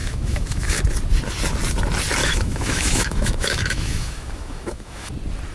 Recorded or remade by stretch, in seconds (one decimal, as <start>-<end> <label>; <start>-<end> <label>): 0.0-0.8 remade; 0.8-2.2 recorded; 2.2-5.1 remade; 5.1-5.5 recorded